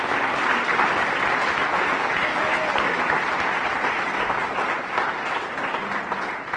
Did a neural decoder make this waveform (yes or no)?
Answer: no